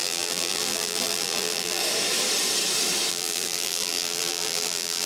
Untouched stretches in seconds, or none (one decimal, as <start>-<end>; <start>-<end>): 1.8-3.1